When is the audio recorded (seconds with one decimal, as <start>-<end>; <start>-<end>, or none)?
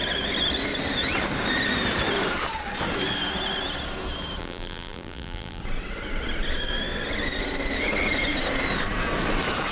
0.0-4.4; 5.6-9.7